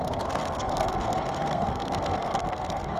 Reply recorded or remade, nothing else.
remade